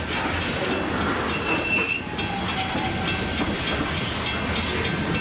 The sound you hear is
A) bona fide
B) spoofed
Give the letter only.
A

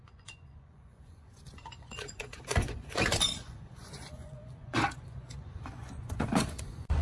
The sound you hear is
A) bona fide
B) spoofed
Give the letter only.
B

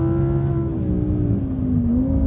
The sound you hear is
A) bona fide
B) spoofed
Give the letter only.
A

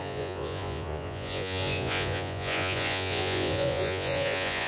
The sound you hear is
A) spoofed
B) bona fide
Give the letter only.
A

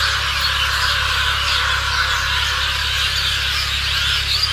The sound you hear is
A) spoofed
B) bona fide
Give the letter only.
B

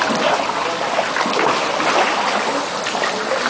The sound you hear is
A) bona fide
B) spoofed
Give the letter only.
A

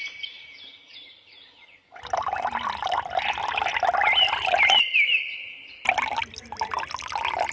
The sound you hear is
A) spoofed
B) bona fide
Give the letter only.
B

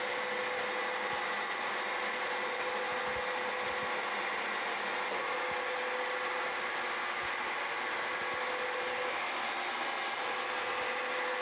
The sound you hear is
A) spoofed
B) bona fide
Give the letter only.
B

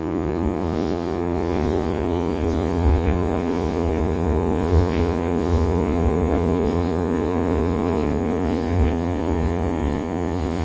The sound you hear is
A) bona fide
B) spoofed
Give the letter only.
B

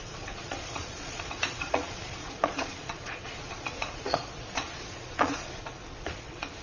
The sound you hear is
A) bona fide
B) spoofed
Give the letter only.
B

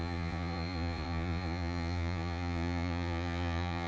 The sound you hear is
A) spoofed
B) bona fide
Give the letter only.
A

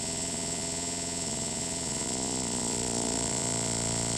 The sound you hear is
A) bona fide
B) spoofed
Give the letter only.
B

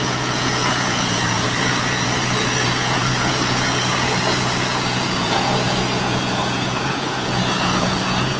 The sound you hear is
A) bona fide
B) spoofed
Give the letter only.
B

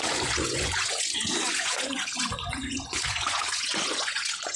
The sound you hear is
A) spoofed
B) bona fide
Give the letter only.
A